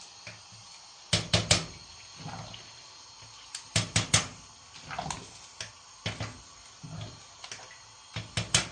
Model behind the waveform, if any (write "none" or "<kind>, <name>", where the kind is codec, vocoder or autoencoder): none